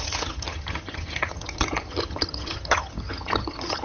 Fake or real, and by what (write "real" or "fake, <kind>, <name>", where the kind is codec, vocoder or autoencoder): fake, vocoder, HiFi-GAN